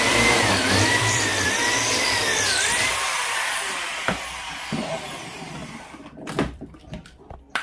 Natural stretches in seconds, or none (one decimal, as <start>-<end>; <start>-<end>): none